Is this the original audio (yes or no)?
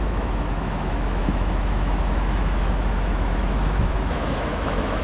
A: no